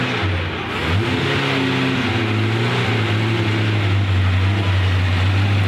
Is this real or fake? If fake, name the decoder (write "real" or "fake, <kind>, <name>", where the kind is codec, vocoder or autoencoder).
real